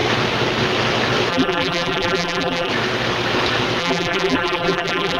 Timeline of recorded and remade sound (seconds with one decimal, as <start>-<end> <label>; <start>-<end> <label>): 0.0-1.3 recorded; 1.3-2.7 remade; 2.7-3.8 recorded; 3.8-5.2 remade